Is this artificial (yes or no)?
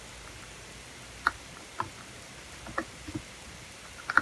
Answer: no